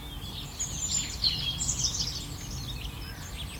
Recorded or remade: recorded